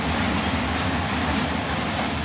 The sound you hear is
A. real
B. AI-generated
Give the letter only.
A